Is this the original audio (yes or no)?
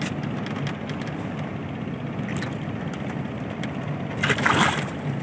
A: yes